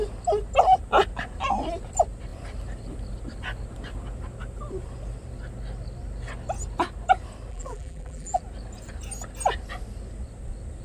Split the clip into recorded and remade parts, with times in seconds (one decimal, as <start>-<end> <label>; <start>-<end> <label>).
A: 0.0-7.5 recorded; 7.5-8.4 remade; 8.4-10.8 recorded